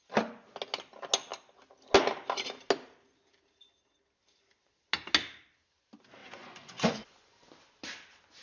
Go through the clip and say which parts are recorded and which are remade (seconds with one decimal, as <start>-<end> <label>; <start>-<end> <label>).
0.0-6.2 recorded; 6.2-7.5 remade; 7.5-8.4 recorded